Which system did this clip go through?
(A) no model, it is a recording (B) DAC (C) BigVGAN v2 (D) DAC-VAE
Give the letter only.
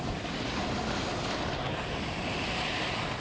A